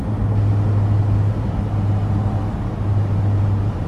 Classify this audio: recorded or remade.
recorded